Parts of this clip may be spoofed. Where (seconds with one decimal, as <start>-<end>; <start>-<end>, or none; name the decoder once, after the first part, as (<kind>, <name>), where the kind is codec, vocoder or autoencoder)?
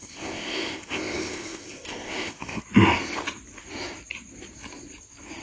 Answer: 0.0-2.6 (codec, ZipCodec)